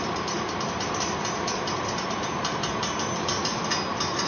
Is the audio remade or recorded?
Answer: remade